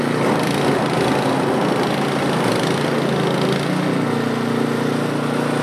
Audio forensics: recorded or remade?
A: recorded